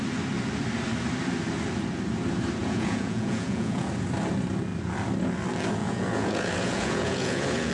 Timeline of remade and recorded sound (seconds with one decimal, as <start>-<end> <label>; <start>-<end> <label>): 0.0-2.6 recorded; 2.6-3.9 remade; 3.9-5.8 recorded; 5.8-7.7 remade